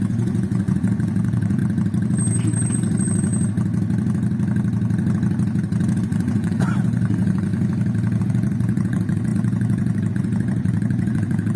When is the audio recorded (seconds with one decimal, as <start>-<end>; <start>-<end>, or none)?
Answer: 1.6-2.7; 3.3-6.0; 7.5-8.2